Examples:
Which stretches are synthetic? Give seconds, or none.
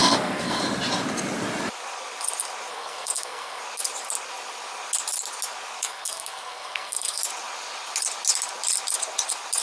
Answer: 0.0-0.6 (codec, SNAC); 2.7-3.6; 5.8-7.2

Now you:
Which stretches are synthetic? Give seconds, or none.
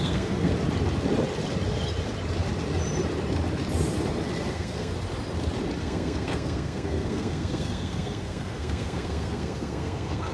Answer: 0.0-0.5 (codec, SNAC); 4.5-4.9; 5.8-10.3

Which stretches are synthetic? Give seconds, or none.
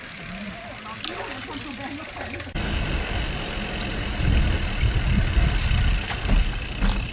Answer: none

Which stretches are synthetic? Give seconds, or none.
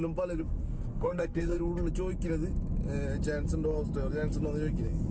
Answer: 0.6-1.6 (codec, SNAC)